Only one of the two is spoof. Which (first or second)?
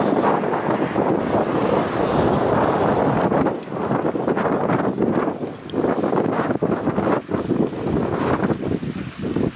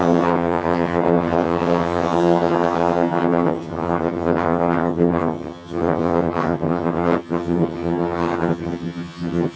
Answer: second